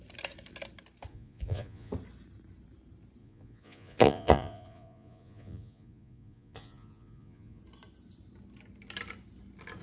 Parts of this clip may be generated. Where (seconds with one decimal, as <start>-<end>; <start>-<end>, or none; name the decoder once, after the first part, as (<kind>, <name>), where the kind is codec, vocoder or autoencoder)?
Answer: 1.1-1.9 (vocoder, Vocos); 3.2-7.6